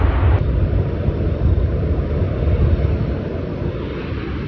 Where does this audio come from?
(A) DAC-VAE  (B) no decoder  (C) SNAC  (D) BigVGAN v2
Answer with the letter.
B